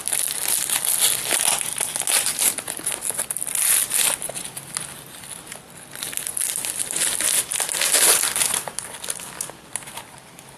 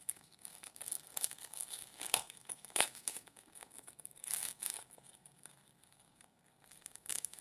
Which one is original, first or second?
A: first